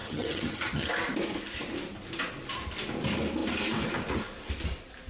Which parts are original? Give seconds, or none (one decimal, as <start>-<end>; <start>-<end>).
0.9-5.1